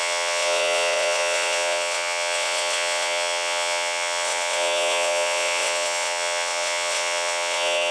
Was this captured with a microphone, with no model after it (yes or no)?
no